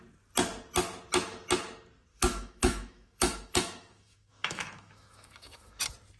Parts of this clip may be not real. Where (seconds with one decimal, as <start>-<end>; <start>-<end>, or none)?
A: 2.1-5.8